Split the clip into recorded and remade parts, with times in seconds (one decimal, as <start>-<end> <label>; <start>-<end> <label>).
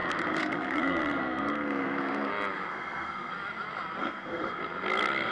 0.0-2.3 remade; 2.3-2.7 recorded; 2.7-3.3 remade; 3.3-4.0 recorded; 4.0-4.6 remade; 4.6-5.3 recorded